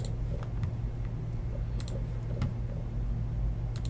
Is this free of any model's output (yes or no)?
yes